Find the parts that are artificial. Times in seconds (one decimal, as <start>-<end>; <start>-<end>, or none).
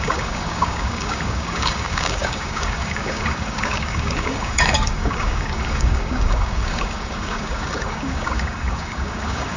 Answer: 0.0-9.6